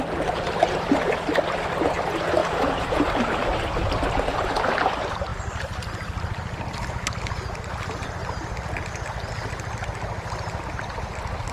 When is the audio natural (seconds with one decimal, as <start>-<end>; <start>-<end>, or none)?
0.0-2.4; 3.0-11.5